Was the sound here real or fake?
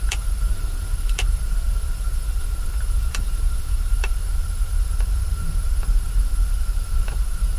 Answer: fake